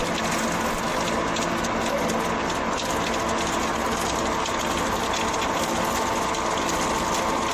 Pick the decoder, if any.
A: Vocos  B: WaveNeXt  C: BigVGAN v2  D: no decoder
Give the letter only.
D